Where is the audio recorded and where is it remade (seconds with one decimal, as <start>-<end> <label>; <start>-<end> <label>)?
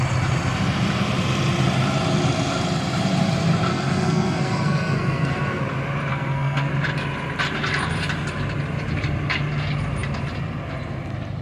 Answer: 0.0-3.7 recorded; 3.7-5.6 remade; 5.6-6.1 recorded; 6.1-6.7 remade; 6.7-11.4 recorded